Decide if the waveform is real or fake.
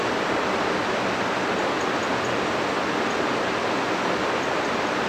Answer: real